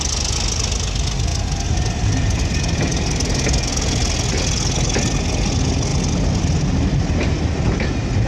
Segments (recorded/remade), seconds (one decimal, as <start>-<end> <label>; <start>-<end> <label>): 0.0-8.3 recorded

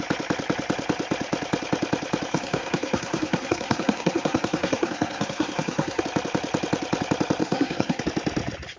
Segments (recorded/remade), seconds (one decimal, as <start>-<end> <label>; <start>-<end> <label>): 0.0-2.3 recorded; 2.3-6.0 remade; 6.0-7.4 recorded; 7.4-8.0 remade; 8.0-8.8 recorded